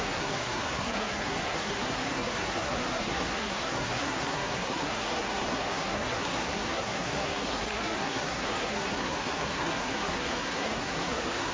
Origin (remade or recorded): remade